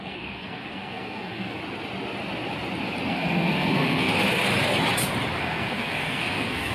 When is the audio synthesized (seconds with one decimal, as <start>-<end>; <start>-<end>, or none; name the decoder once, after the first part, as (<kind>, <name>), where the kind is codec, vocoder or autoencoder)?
0.0-1.6 (codec, SNAC); 3.1-4.1; 5.4-6.7